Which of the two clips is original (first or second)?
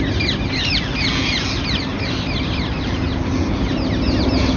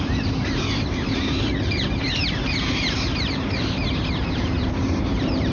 first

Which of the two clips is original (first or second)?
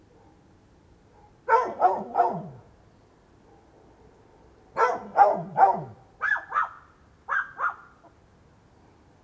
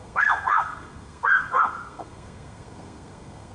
first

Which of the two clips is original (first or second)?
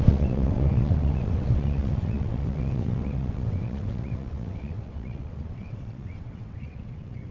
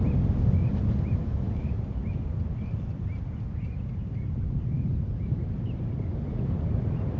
second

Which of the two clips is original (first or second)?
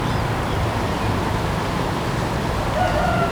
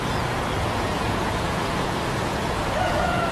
first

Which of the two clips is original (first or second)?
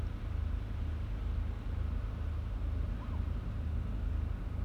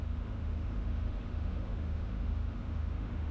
first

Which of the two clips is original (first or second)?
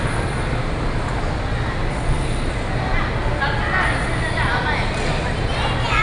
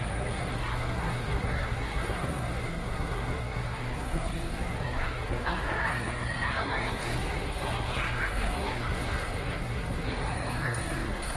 first